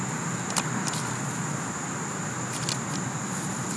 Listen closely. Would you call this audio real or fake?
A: real